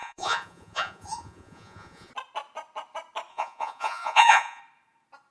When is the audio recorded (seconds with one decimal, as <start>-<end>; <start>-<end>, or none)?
2.1-3.3; 4.6-5.3